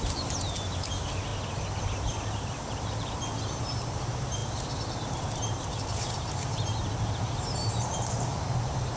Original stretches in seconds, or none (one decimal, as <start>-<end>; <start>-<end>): 1.3-1.8